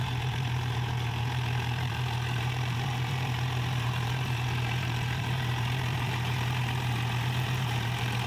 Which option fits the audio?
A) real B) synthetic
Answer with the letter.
B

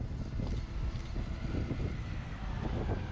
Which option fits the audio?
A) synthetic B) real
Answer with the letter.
B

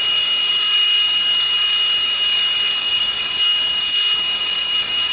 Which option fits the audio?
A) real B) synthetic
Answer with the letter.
B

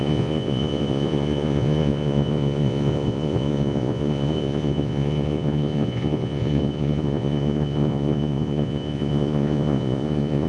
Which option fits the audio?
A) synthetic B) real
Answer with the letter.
A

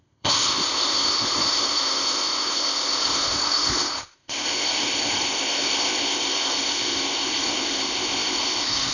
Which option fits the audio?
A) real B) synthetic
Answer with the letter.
B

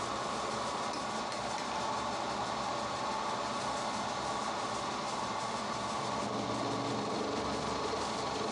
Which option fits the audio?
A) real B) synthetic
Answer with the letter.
A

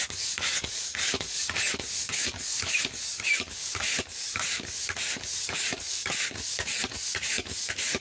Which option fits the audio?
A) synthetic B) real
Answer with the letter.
A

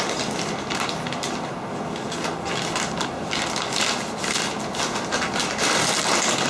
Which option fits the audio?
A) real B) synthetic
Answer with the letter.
A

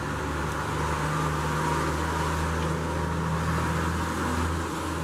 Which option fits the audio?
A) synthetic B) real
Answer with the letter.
B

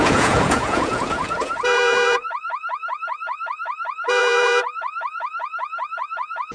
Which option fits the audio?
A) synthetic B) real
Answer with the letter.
A